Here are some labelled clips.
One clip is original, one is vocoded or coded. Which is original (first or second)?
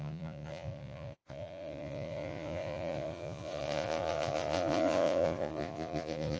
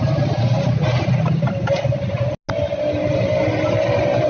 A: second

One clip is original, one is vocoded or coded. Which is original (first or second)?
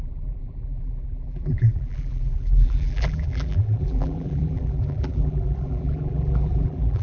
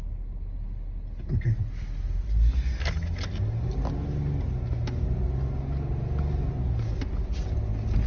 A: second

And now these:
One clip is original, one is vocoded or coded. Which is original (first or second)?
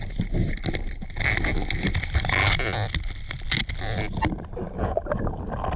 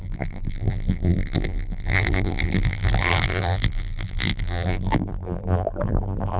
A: first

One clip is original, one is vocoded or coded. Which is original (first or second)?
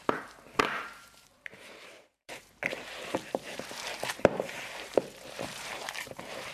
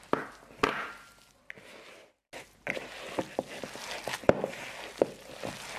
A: second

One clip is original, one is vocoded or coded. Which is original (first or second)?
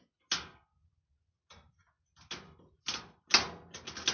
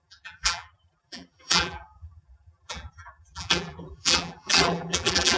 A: first